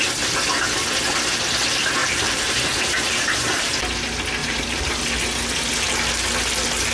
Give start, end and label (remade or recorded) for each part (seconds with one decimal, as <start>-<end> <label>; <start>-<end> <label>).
0.0-2.0 recorded; 2.0-3.7 remade; 3.7-4.4 recorded; 4.4-5.0 remade; 5.0-6.9 recorded